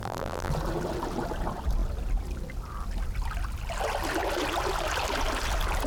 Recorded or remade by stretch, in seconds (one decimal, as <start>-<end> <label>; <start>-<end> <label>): 0.0-0.5 remade; 0.5-5.9 recorded